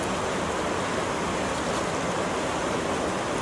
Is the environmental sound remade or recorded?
recorded